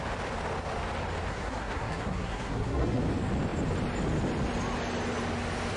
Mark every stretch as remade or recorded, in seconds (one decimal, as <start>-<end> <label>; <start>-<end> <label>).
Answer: 0.0-1.3 recorded; 1.3-3.0 remade; 3.0-5.8 recorded